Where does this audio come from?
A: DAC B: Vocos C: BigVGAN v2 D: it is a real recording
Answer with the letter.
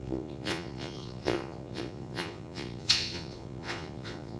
B